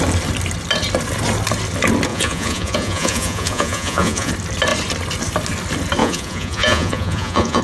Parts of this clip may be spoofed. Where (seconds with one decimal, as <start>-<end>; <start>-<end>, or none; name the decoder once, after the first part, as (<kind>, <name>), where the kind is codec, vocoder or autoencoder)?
2.1-4.3 (vocoder, Vocos); 6.0-7.6